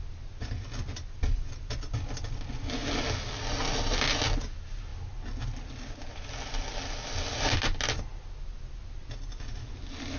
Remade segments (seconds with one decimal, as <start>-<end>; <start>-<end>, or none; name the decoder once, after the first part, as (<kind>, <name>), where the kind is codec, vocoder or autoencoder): none